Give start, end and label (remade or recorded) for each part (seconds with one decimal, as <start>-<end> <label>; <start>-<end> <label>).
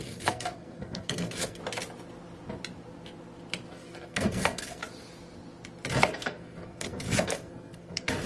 0.0-1.6 remade; 1.6-3.7 recorded; 3.7-4.8 remade; 4.8-6.0 recorded; 6.0-8.3 remade